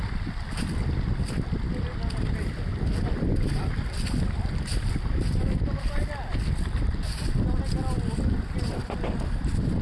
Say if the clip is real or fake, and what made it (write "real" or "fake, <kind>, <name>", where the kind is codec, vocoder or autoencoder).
real